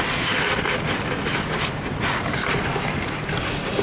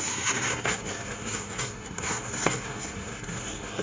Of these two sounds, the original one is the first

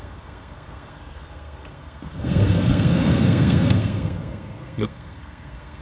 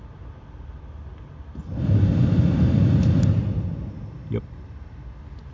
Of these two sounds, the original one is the second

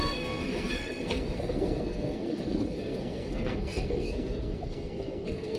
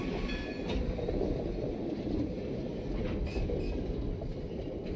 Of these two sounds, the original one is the second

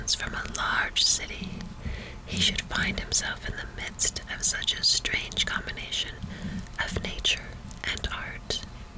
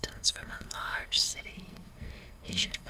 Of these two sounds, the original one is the first